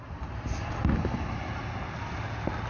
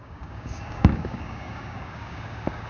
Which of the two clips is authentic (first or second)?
first